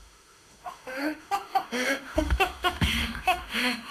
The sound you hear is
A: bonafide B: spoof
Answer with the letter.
B